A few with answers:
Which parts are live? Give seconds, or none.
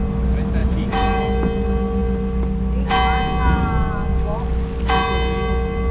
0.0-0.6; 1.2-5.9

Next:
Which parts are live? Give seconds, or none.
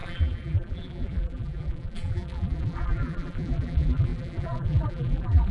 none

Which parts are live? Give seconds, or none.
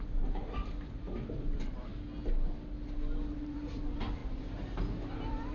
1.9-3.2; 4.2-5.1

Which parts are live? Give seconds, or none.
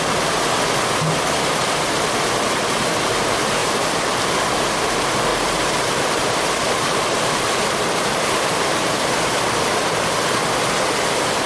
0.0-3.6; 4.2-5.3; 8.2-11.5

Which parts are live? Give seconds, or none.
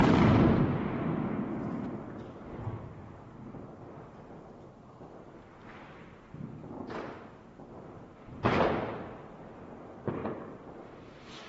0.0-11.5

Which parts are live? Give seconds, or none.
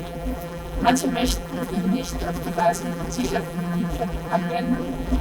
none